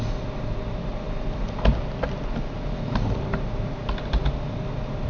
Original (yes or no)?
yes